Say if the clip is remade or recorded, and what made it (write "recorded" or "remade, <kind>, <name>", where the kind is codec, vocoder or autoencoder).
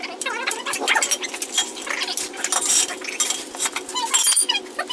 recorded